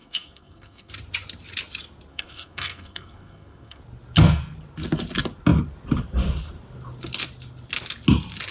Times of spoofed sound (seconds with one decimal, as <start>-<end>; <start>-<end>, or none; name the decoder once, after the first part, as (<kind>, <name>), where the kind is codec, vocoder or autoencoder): 0.0-0.9 (codec, SNAC); 2.1-3.8